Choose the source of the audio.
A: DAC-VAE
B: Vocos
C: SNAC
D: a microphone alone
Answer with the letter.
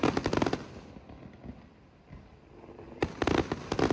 D